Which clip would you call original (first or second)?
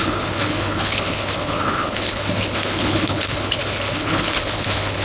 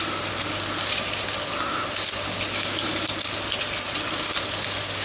second